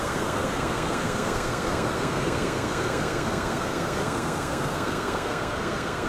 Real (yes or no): no